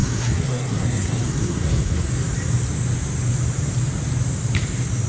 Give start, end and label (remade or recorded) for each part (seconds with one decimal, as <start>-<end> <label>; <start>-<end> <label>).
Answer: 0.0-2.1 remade; 2.1-5.1 recorded